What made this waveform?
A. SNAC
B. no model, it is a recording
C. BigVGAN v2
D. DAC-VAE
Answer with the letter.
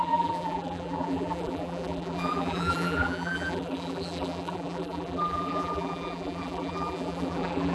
C